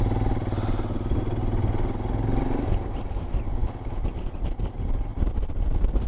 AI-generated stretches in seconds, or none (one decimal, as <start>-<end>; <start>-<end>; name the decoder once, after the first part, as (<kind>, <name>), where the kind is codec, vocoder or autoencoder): 5.1-6.1 (vocoder, BigVGAN v2)